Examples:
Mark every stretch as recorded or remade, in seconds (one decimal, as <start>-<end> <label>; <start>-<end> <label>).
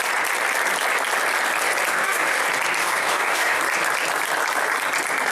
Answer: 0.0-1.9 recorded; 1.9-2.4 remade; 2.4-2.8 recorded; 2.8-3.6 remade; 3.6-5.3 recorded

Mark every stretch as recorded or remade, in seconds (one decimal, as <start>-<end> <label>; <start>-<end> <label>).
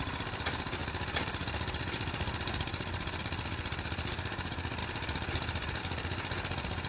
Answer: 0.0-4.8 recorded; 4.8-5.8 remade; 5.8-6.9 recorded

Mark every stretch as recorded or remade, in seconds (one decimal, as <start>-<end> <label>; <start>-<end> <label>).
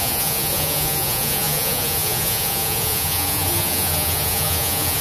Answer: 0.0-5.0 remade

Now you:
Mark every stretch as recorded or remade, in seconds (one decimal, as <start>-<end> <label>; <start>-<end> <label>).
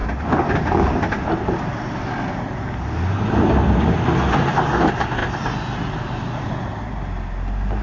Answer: 0.0-7.8 recorded